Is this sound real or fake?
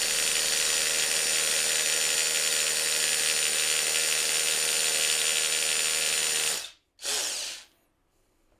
real